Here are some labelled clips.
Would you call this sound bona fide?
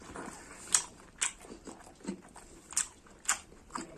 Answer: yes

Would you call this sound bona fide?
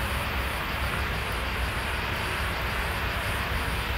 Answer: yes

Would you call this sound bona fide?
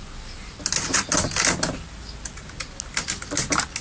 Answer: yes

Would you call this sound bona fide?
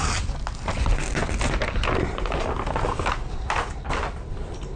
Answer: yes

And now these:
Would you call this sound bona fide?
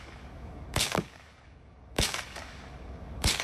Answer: no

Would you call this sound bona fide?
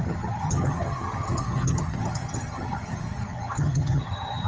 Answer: no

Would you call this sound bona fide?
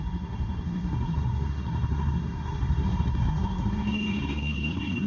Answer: no